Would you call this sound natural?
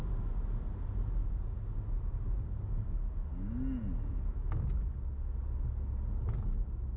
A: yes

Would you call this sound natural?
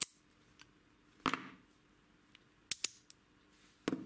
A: yes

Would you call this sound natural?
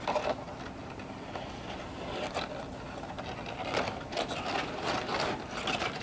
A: yes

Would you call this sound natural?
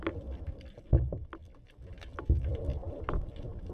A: yes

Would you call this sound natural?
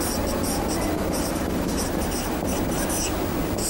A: yes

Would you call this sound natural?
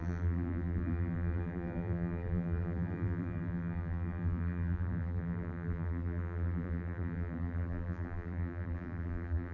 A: no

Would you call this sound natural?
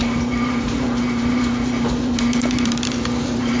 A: no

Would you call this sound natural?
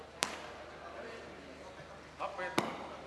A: no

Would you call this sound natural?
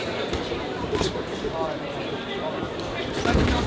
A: no